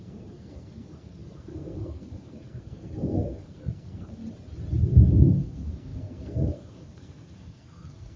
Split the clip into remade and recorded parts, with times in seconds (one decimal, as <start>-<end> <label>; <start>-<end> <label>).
0.0-4.2 remade; 4.2-4.8 recorded; 4.8-8.2 remade